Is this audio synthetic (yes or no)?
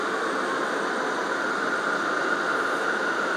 no